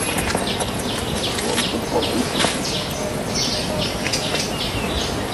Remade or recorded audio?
recorded